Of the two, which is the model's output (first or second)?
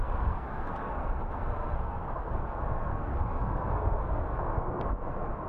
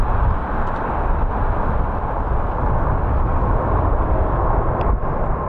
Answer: first